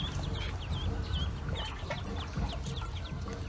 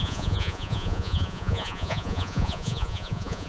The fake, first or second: second